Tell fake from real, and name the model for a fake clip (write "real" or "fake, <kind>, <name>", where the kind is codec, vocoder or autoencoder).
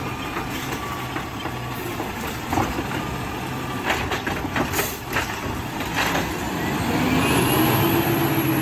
real